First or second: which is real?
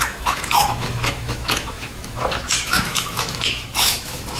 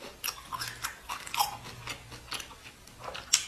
second